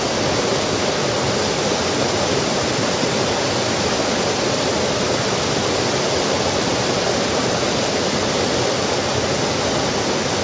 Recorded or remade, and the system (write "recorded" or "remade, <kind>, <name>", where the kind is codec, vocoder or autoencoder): recorded